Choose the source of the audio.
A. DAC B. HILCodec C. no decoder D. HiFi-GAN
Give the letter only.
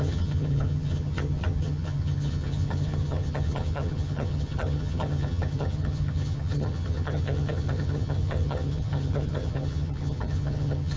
D